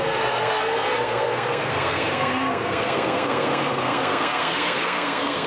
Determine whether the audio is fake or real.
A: fake